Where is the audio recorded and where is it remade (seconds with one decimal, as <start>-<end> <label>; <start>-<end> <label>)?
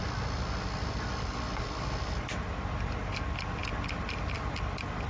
0.0-5.1 recorded